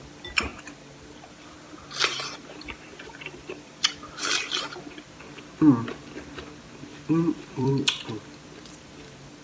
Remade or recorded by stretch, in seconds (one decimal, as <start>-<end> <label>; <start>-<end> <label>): 0.0-2.9 recorded; 2.9-3.7 remade; 3.7-6.9 recorded; 6.9-7.7 remade; 7.7-9.4 recorded